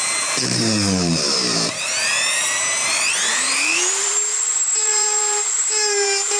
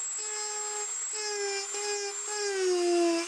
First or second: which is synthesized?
first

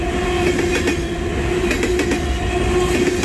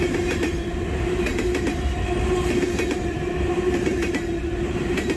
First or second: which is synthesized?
second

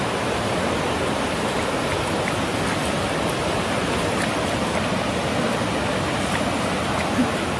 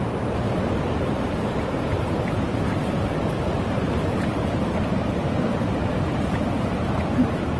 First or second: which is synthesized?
second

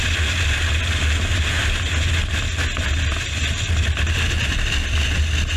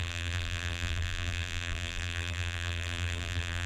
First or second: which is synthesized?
second